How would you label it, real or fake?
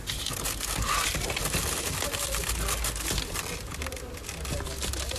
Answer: real